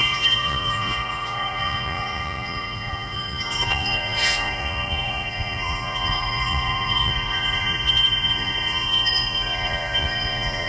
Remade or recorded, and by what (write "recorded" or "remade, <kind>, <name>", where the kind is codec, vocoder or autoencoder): remade, vocoder, Vocos